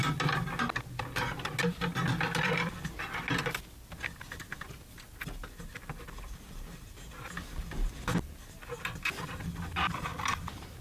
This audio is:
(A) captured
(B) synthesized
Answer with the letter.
A